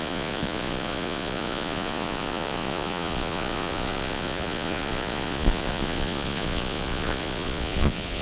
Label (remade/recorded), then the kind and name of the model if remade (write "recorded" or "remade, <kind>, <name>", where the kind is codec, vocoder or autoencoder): remade, vocoder, Vocos